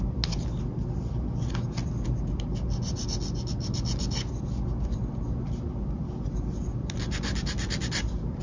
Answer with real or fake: real